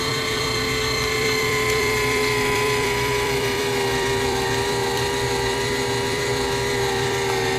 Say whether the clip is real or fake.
fake